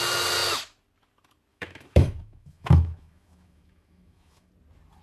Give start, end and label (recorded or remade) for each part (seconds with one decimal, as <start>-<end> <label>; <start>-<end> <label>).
0.0-1.5 recorded; 1.5-4.5 remade; 4.5-5.0 recorded